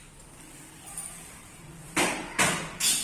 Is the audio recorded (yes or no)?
no